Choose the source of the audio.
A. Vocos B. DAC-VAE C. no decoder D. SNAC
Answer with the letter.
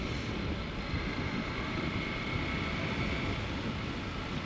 C